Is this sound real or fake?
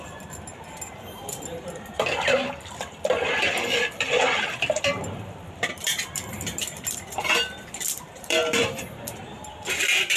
fake